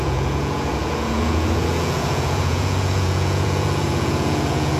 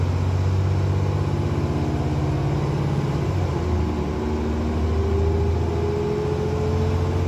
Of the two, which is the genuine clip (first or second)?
second